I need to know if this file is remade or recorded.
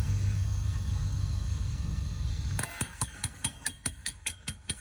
remade